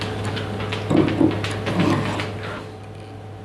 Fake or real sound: real